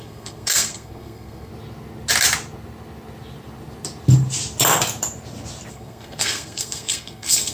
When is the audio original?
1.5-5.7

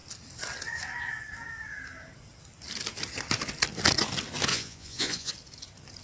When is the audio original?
0.0-4.5; 5.3-6.0

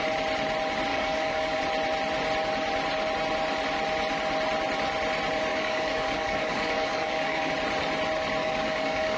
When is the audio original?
0.0-0.9; 1.6-5.5; 7.5-8.4

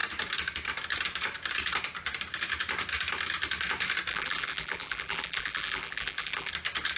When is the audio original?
0.0-4.1; 6.5-7.0

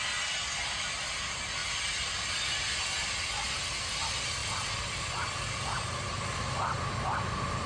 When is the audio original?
0.0-7.7